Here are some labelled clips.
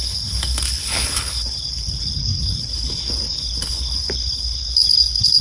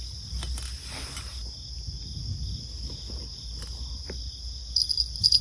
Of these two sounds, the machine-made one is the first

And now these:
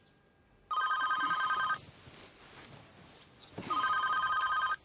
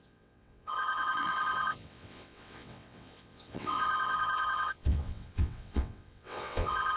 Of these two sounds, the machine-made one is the second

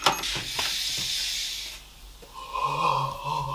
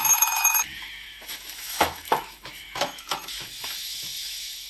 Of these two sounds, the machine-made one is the second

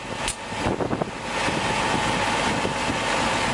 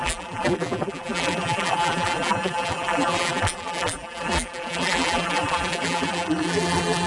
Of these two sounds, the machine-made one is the second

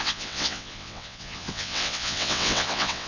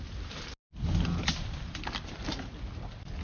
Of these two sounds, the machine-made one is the first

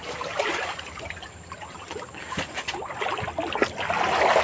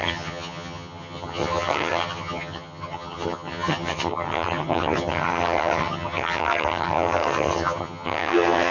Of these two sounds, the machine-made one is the second